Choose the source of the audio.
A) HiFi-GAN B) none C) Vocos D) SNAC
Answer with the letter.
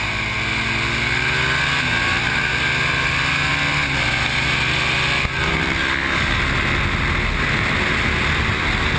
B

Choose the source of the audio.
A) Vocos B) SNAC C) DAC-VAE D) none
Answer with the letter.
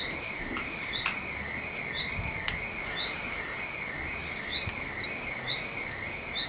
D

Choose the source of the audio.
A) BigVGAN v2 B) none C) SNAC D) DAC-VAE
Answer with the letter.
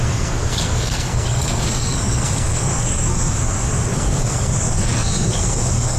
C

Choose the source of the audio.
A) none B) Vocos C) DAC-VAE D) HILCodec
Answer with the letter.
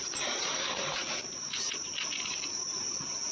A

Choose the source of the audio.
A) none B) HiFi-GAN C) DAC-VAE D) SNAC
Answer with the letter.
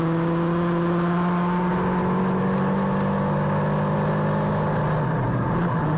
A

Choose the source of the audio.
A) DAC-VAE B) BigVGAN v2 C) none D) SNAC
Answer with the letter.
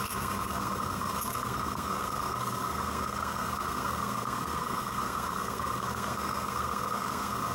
D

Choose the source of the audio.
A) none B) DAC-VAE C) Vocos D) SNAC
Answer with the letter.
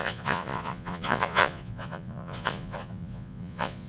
C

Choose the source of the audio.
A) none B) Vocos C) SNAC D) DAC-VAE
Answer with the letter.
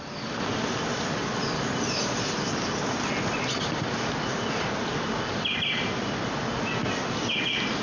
A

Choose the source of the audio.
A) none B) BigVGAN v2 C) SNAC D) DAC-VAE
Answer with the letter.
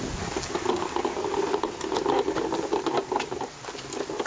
A